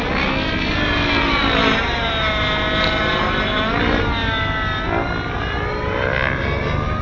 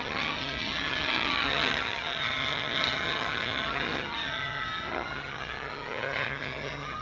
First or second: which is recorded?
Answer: first